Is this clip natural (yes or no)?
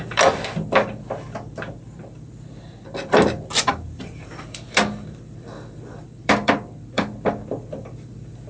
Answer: no